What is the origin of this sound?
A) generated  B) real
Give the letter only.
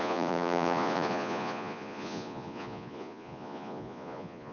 A